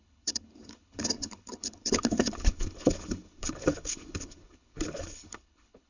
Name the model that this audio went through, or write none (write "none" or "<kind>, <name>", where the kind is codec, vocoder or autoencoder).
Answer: codec, HILCodec